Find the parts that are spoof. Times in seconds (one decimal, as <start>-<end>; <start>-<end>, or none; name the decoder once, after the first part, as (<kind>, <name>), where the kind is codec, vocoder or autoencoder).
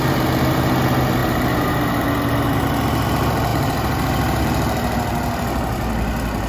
3.5-4.4 (vocoder, BigVGAN v2)